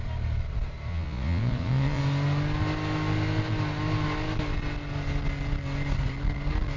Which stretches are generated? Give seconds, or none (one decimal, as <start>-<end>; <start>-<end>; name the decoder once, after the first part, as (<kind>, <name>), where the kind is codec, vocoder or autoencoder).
0.9-2.0 (vocoder, Vocos)